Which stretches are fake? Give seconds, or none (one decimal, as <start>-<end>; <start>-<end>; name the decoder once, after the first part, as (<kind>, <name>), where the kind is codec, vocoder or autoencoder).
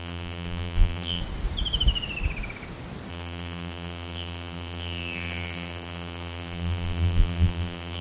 0.0-1.2 (vocoder, BigVGAN v2); 3.1-8.0